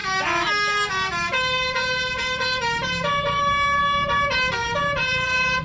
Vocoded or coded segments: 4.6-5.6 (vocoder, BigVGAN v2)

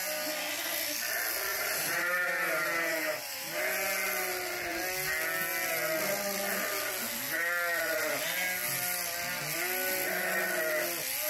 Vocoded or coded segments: 1.5-3.6 (vocoder, BigVGAN v2)

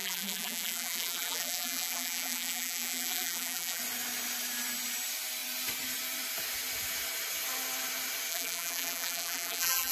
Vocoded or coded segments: 0.0-3.8 (vocoder, BigVGAN v2); 8.3-9.9

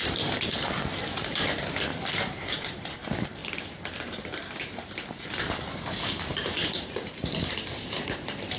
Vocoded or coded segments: 0.0-3.4 (vocoder, BigVGAN v2); 3.9-6.4; 7.0-8.6

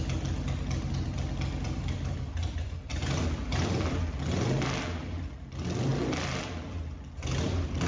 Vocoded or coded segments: 0.0-7.9 (vocoder, BigVGAN v2)